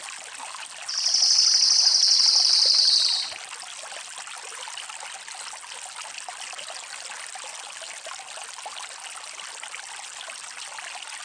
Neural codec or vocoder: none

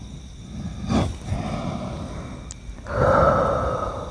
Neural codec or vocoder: none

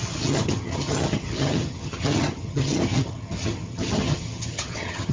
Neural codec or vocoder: vocoder, HiFi-GAN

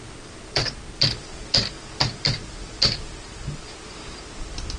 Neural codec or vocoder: none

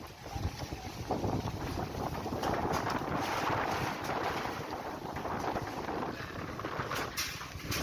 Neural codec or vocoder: none